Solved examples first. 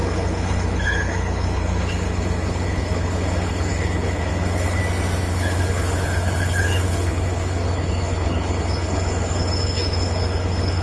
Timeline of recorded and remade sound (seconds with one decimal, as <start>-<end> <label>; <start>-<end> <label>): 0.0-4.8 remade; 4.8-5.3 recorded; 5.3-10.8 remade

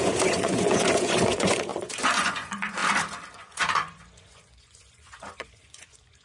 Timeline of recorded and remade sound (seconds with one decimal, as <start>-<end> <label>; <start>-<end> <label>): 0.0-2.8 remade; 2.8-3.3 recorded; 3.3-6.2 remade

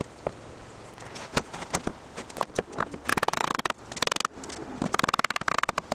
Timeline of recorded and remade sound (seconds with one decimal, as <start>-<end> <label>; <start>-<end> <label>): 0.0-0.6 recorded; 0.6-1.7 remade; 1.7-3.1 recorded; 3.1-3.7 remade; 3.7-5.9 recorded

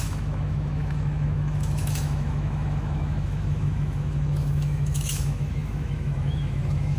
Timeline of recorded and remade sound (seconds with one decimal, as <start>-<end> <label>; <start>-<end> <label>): 0.0-7.0 remade

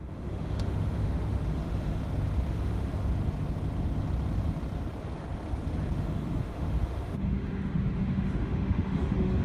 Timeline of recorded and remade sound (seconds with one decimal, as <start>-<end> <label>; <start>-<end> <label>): 0.0-2.0 remade; 2.0-2.5 recorded; 2.5-3.0 remade; 3.0-6.0 recorded; 6.0-9.4 remade